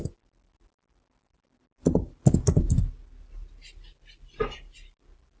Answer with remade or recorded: recorded